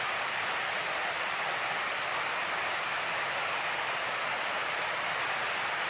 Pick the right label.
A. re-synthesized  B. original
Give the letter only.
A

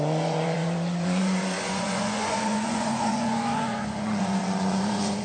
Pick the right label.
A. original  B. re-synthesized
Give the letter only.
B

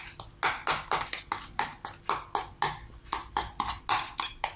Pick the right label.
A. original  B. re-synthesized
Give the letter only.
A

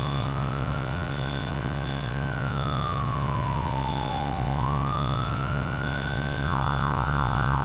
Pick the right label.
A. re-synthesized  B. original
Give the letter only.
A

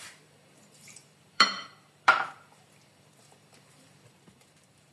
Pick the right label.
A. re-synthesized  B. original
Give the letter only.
A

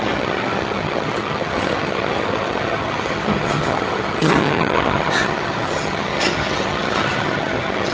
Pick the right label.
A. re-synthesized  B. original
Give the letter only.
A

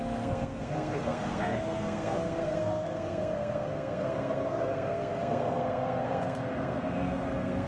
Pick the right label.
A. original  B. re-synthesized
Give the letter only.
B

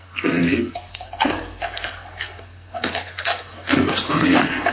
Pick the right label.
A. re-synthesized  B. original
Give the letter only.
A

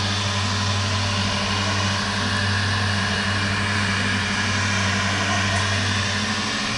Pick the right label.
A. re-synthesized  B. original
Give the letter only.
B